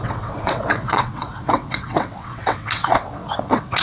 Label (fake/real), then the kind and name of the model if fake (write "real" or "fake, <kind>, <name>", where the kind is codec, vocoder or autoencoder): fake, vocoder, WaveNeXt